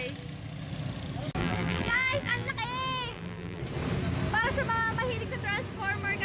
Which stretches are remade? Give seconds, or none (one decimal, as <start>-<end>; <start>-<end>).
1.4-2.5; 3.1-3.6